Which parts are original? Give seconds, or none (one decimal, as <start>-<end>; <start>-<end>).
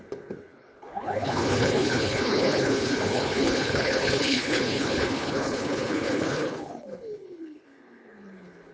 none